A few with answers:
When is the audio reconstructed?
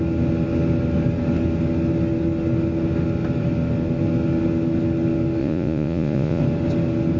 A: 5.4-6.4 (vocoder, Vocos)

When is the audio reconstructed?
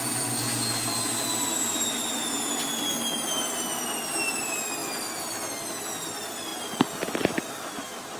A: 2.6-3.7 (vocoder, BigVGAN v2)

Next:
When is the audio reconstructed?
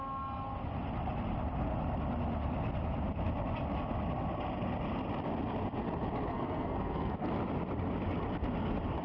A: 6.3-7.3 (codec, SNAC)